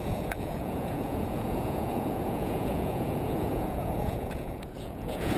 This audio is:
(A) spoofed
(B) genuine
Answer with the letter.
A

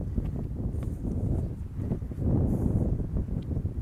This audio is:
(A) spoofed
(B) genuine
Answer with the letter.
B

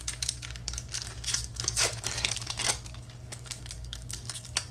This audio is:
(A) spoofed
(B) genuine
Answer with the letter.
A